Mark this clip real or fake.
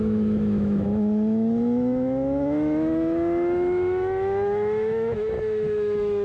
fake